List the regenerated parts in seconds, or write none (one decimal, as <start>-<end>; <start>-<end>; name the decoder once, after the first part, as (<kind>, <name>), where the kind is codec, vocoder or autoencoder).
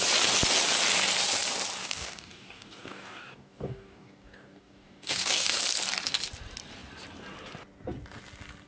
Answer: 1.8-5.6 (codec, DAC)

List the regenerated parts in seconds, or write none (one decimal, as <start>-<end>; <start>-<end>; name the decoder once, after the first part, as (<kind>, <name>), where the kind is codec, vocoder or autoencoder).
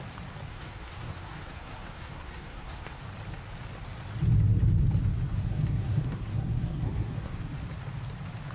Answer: 0.5-3.0 (codec, SNAC); 5.3-7.4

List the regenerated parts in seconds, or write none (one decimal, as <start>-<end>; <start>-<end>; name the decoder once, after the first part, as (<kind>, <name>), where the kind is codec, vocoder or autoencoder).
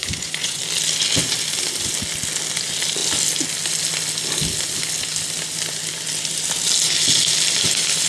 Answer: 0.0-0.6 (vocoder, Vocos)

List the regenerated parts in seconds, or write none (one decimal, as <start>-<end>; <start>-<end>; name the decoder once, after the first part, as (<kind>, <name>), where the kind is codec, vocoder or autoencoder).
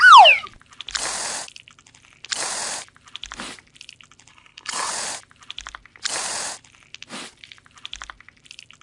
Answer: 4.3-4.9 (codec, HILCodec)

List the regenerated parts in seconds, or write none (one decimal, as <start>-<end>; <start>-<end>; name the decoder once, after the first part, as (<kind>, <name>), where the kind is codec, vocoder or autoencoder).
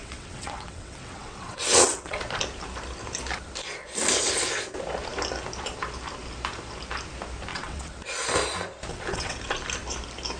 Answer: 0.0-2.2 (vocoder, WaveNeXt); 7.5-8.0; 8.9-9.4